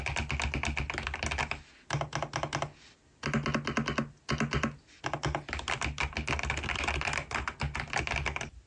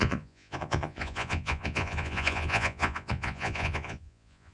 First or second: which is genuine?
first